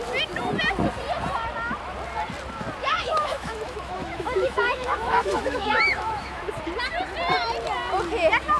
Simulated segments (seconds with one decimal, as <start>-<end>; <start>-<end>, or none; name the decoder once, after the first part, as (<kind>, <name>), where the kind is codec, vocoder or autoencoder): 2.8-6.4 (autoencoder, DAC-VAE)